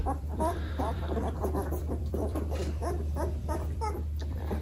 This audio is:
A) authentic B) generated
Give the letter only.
B